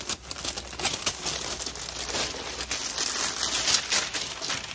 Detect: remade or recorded recorded